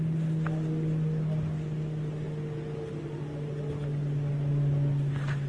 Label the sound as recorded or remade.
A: recorded